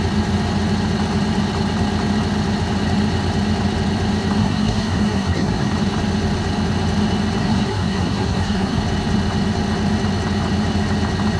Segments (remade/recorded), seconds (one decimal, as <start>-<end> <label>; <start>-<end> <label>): 0.0-4.4 recorded; 4.4-5.7 remade; 5.7-7.4 recorded; 7.4-8.8 remade; 8.8-11.4 recorded